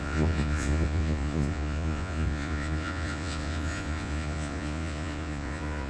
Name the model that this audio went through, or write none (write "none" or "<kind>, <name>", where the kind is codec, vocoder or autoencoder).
vocoder, Vocos